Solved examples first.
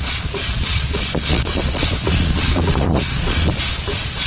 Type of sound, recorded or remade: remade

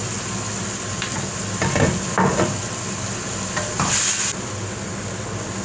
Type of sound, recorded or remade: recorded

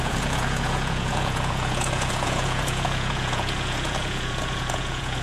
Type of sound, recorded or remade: remade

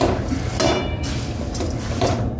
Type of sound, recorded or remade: recorded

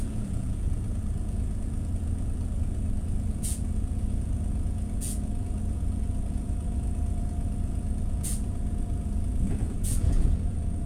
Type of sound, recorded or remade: remade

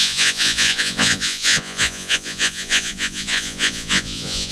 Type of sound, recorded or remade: remade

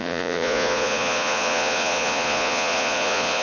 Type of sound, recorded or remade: remade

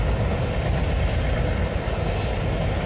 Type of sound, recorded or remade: recorded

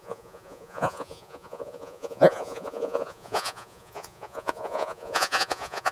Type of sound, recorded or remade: remade